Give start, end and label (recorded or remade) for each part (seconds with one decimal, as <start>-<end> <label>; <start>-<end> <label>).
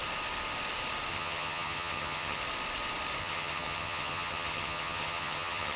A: 0.0-1.1 recorded; 1.1-2.4 remade; 2.4-3.2 recorded; 3.2-5.8 remade